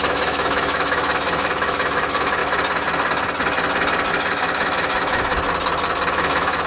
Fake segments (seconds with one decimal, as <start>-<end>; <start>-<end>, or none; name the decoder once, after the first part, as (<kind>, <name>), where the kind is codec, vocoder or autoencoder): 0.0-2.4 (autoencoder, DAC-VAE); 4.1-5.3; 6.1-6.7